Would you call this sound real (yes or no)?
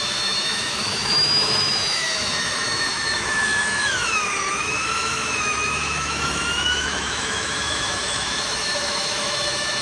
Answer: no